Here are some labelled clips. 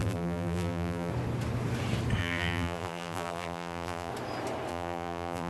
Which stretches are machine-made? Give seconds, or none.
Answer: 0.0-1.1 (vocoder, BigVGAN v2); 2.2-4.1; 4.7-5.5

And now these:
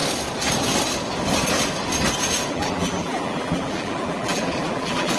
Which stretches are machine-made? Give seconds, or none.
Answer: 2.5-5.2 (vocoder, BigVGAN v2)

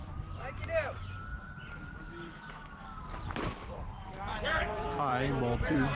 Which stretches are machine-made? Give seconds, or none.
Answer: 0.6-5.9 (vocoder, BigVGAN v2)

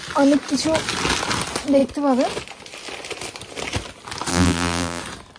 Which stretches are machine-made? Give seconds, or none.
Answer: 4.3-5.0 (vocoder, BigVGAN v2)

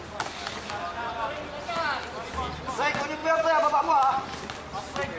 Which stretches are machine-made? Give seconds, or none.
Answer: 3.2-3.8 (vocoder, BigVGAN v2)